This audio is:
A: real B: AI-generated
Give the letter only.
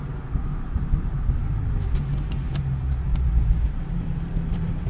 B